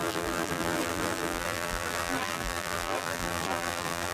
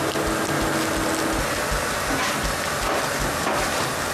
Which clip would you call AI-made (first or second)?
first